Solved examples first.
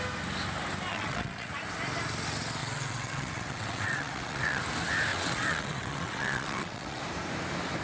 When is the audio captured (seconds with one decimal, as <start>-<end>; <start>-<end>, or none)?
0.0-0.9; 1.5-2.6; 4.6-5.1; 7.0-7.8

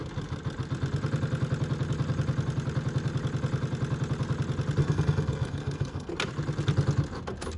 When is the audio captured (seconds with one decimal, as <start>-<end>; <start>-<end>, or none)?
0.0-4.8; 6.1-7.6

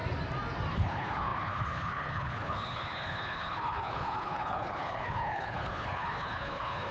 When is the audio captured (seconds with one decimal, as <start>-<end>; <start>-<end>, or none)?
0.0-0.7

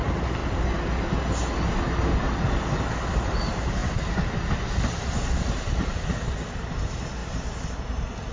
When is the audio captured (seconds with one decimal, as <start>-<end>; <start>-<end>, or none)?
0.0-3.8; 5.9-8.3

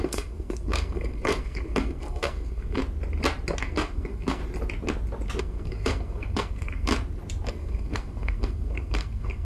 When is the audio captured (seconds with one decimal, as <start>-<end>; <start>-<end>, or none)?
2.8-3.6; 4.4-5.4; 6.9-7.5

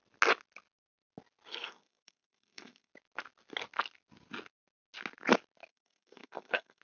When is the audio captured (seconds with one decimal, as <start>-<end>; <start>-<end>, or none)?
0.0-1.5; 2.9-5.7